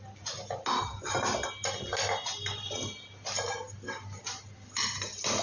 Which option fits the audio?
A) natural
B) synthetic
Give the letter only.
A